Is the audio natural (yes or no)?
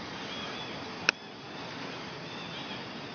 yes